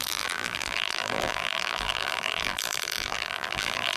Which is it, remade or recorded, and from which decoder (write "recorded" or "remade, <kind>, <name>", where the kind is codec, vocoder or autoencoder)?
remade, vocoder, BigVGAN v2